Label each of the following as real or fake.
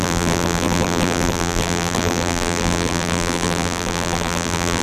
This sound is fake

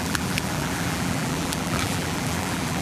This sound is fake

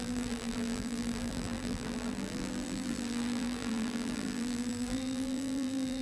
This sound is fake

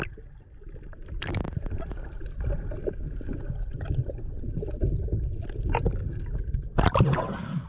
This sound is real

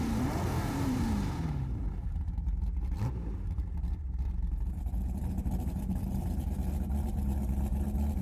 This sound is fake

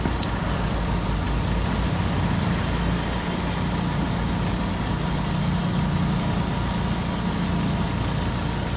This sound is real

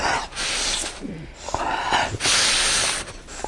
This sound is fake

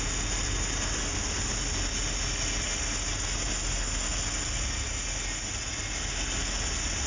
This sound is real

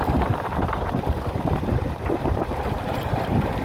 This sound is fake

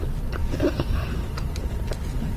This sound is real